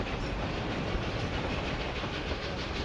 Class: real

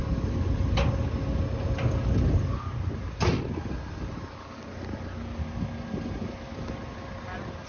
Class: real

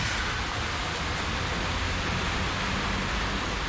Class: real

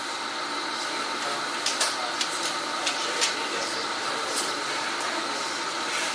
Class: real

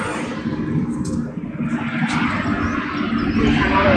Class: real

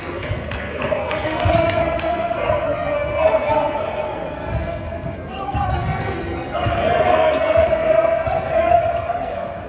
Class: fake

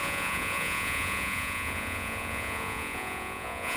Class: fake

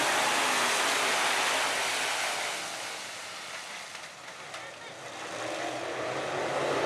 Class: real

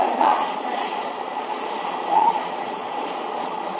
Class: fake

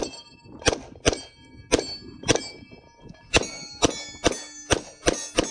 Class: real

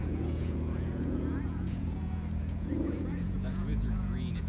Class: fake